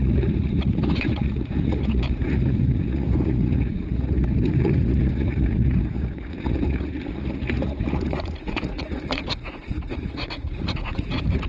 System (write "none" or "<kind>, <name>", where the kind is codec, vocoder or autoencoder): vocoder, Vocos